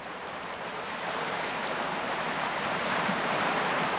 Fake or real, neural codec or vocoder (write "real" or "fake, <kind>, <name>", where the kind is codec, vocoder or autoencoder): fake, vocoder, BigVGAN v2